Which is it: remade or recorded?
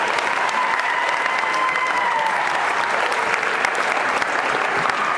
recorded